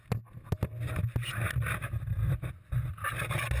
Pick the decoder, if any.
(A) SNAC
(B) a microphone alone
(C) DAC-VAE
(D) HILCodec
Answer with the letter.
B